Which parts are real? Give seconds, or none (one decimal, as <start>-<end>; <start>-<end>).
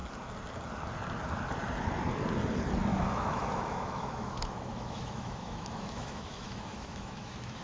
0.0-2.9